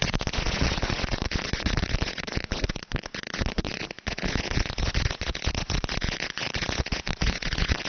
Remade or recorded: remade